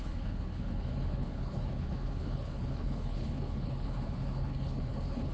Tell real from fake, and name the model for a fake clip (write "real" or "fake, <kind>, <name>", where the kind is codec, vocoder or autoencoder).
fake, codec, HILCodec